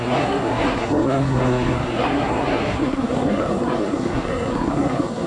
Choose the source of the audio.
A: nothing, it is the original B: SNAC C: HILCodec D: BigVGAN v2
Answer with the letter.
B